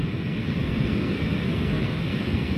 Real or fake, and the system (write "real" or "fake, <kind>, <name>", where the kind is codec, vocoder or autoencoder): fake, codec, SNAC